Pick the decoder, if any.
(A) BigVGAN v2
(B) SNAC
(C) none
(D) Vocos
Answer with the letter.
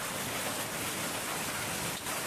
C